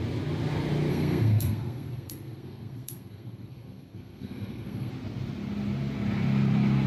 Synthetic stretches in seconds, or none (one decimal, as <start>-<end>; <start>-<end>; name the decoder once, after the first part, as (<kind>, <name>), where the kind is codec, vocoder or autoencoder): 0.9-4.9 (codec, SNAC)

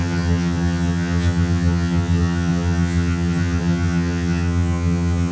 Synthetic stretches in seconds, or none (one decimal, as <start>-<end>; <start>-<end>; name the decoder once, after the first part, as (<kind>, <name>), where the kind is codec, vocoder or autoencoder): 0.0-5.3 (vocoder, HiFi-GAN)

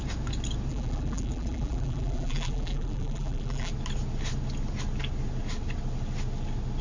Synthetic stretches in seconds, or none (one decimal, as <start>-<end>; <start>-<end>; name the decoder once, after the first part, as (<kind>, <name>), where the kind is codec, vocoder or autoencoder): 0.7-3.7 (vocoder, BigVGAN v2)

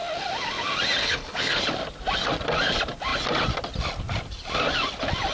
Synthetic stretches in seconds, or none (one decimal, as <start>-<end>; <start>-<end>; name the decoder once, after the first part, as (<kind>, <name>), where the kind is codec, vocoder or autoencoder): 1.0-1.6 (codec, HILCodec)

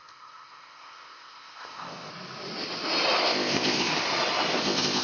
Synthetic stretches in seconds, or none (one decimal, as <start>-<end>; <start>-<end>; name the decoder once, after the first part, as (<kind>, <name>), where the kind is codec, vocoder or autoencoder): 0.0-2.1 (codec, ZipCodec); 3.2-3.9; 4.6-5.0

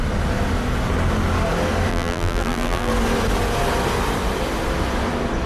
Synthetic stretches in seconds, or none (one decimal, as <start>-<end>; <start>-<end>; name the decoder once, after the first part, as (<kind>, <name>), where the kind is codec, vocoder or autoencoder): 1.9-2.9 (vocoder, BigVGAN v2)

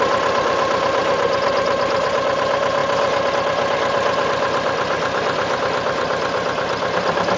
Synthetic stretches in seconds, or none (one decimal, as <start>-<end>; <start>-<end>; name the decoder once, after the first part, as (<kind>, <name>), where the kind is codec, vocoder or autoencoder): 0.0-1.0 (vocoder, BigVGAN v2); 2.1-2.8; 3.3-7.4

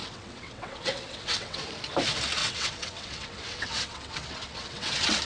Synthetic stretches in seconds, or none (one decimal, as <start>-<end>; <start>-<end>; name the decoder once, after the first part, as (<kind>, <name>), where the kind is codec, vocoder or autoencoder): 0.0-1.6 (vocoder, WaveNeXt); 2.4-5.2